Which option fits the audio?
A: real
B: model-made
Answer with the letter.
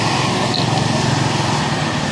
A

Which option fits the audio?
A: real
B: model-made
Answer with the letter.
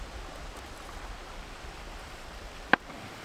A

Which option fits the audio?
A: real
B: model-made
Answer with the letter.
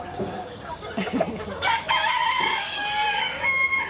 B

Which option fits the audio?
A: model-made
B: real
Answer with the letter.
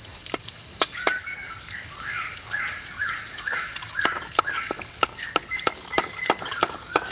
A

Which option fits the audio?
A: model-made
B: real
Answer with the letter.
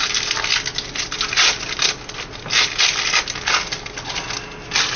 B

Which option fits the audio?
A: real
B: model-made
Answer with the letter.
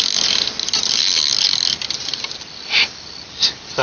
A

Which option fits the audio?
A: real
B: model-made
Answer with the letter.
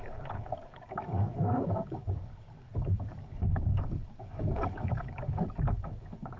B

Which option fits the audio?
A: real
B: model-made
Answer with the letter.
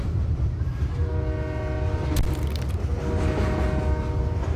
A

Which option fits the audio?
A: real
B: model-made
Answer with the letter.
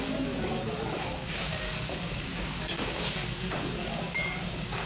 B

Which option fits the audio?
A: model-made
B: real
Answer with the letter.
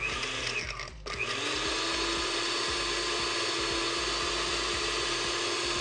B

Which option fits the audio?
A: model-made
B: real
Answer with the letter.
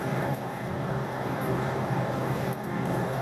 A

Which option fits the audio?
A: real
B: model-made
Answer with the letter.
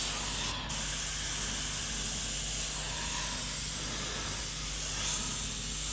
A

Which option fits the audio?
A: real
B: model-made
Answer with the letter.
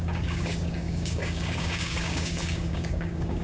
B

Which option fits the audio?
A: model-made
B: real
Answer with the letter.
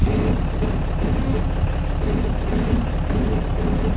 B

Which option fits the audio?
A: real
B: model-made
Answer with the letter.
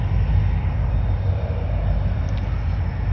A